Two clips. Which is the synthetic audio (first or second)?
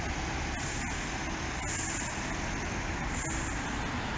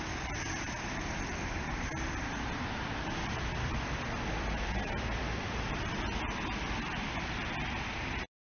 second